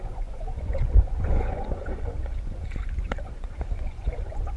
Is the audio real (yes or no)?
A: no